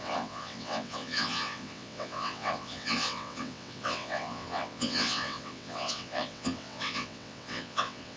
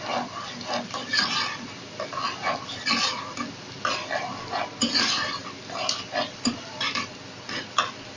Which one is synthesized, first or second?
first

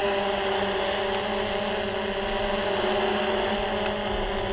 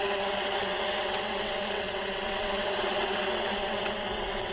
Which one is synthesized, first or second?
second